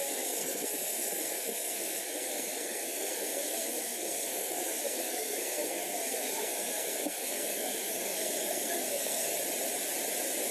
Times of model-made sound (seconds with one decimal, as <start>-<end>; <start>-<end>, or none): 0.0-9.3

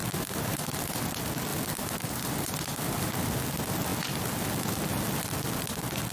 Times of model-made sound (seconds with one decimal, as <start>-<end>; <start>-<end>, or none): 0.0-0.5; 1.5-3.2

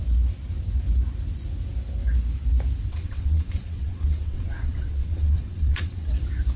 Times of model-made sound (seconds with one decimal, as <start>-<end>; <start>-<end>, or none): 2.9-6.1

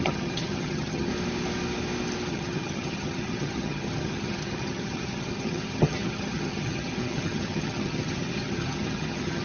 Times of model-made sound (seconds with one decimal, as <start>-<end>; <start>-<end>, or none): 0.0-1.1; 2.3-9.4

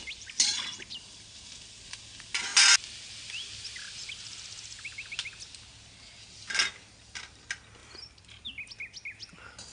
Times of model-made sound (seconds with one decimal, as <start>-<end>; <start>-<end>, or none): 7.8-8.5

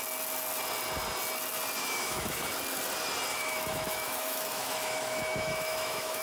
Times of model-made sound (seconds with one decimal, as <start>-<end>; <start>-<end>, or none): 1.8-2.5; 3.3-6.2

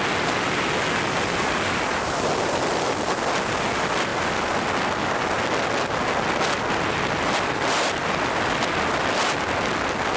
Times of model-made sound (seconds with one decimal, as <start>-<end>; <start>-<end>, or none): none

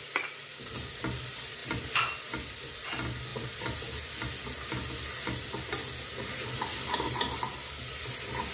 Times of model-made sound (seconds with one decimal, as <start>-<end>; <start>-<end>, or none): 1.6-2.7